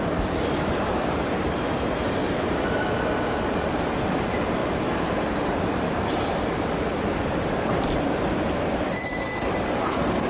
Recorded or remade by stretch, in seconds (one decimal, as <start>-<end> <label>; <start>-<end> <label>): 0.0-2.2 remade; 2.2-4.0 recorded; 4.0-10.3 remade

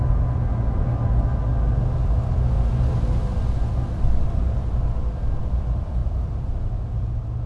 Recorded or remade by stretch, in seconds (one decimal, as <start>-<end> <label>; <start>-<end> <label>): 0.0-6.0 recorded; 6.0-7.5 remade

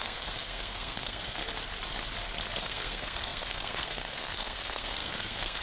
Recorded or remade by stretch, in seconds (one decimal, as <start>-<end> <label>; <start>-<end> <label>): 0.0-1.4 remade; 1.4-2.6 recorded; 2.6-5.6 remade

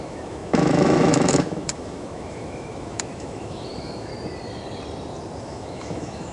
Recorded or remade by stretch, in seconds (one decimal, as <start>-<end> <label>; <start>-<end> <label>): 0.0-4.1 remade; 4.1-5.4 recorded; 5.4-6.3 remade

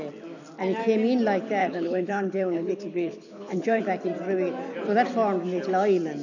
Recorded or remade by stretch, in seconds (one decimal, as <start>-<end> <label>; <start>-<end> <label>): 0.0-1.6 recorded; 1.6-3.8 remade; 3.8-6.2 recorded

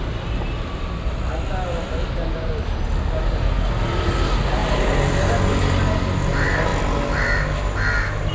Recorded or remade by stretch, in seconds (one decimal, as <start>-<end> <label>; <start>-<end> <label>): 0.0-8.3 recorded

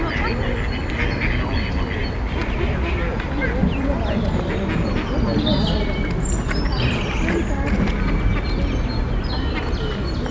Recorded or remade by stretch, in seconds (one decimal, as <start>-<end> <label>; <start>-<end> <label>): 0.0-10.3 recorded